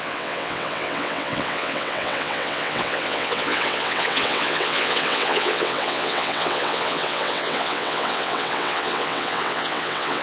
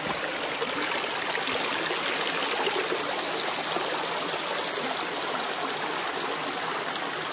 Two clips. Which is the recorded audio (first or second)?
second